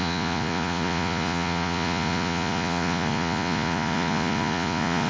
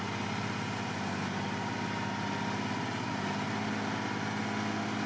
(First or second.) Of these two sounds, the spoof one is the first